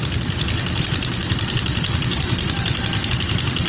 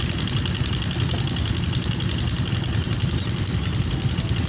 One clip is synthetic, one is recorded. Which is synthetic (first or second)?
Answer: first